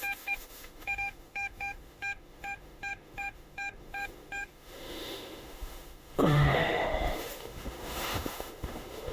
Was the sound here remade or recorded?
remade